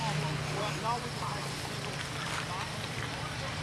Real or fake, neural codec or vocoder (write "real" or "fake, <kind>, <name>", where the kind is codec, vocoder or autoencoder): real